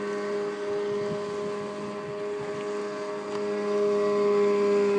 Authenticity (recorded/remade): recorded